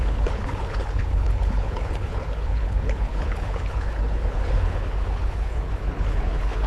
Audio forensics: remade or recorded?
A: remade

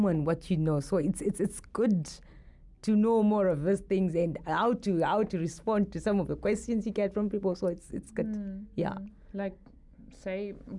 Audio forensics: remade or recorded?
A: recorded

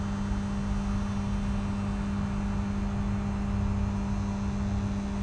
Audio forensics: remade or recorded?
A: recorded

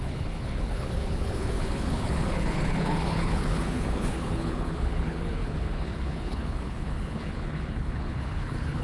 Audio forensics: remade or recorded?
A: remade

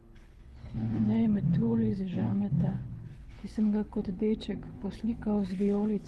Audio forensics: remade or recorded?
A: remade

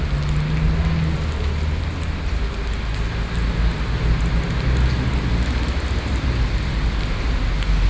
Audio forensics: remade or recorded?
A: recorded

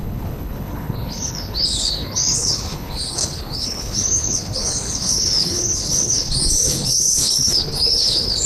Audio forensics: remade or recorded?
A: remade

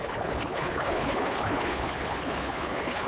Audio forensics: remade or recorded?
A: remade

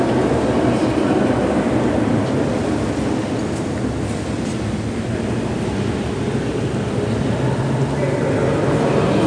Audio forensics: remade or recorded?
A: recorded